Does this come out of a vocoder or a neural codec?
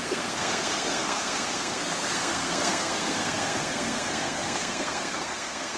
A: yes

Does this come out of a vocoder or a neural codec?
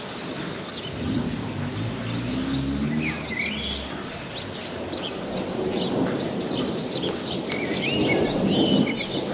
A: no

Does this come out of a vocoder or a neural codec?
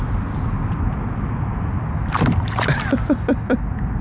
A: no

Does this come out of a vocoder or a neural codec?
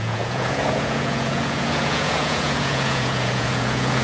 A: yes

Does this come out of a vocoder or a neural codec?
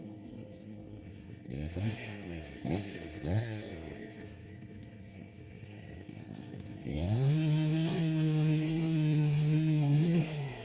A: yes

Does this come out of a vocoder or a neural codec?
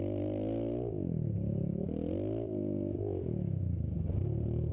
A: no